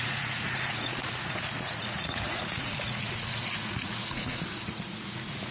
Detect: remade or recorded remade